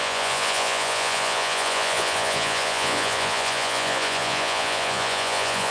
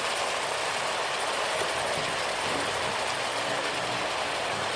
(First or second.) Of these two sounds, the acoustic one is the second